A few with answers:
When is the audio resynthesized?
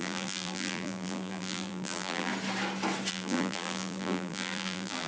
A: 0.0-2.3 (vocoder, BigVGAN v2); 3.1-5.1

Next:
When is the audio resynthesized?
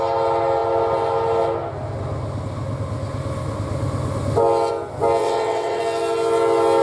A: 5.2-5.8 (vocoder, WaveNeXt)